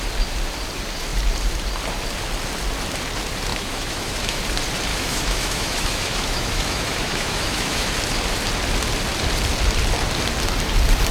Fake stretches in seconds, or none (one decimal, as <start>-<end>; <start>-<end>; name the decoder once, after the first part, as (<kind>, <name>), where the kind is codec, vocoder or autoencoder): 3.5-4.4 (autoencoder, DAC-VAE); 4.9-7.9